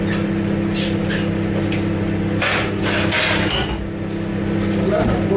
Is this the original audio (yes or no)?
yes